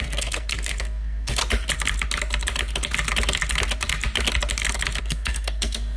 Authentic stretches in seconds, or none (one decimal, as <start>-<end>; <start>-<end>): 1.4-5.0